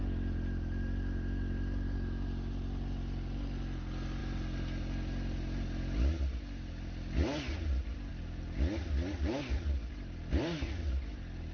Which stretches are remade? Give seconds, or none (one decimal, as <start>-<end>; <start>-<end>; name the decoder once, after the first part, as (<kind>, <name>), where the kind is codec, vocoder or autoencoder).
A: none